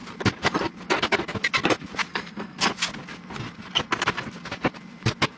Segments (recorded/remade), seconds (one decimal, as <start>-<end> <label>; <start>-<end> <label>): 0.0-2.1 recorded; 2.1-2.7 remade; 2.7-5.4 recorded

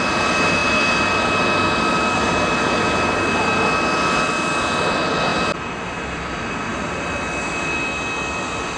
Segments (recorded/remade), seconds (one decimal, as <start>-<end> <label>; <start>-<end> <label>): 0.0-8.8 recorded

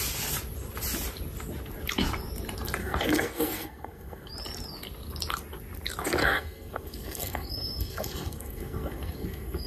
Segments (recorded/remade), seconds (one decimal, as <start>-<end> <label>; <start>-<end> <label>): 0.0-2.8 recorded; 2.8-4.3 remade; 4.3-6.2 recorded; 6.2-9.7 remade

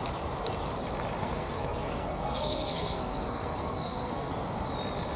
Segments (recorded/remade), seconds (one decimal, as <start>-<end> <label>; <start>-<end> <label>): 0.0-1.2 recorded; 1.2-4.3 remade; 4.3-5.2 recorded

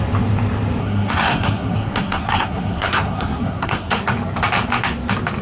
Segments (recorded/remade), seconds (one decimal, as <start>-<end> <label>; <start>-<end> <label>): 0.0-0.8 recorded; 0.8-4.0 remade; 4.0-5.4 recorded

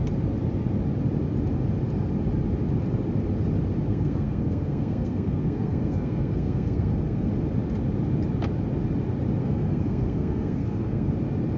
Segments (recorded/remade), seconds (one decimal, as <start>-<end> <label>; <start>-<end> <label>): 0.0-3.9 recorded; 3.9-7.3 remade; 7.3-9.4 recorded; 9.4-11.1 remade; 11.1-11.6 recorded

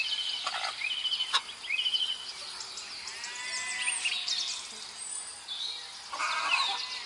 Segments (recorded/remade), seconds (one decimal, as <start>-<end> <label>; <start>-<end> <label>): 0.0-7.1 recorded

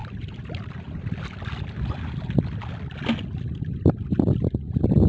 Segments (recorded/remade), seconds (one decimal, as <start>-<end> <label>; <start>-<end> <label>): 0.0-5.1 recorded